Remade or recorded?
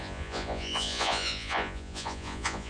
remade